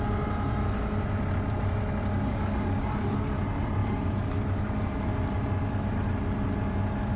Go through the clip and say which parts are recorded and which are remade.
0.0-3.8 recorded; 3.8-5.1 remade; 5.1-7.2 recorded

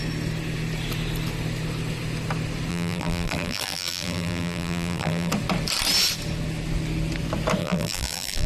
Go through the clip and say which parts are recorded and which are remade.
0.0-2.7 recorded; 2.7-5.3 remade; 5.3-7.6 recorded; 7.6-8.5 remade

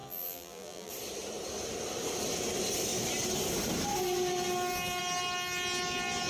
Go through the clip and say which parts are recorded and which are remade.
0.0-0.9 remade; 0.9-6.3 recorded